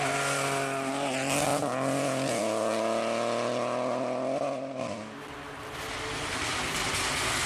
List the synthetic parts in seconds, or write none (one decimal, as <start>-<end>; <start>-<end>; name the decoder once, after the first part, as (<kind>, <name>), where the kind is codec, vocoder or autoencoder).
none